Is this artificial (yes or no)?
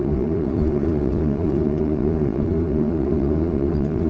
yes